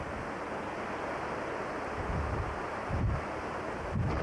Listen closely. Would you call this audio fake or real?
real